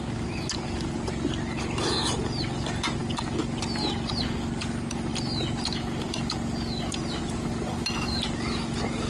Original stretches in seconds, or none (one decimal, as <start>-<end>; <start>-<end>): 0.0-9.1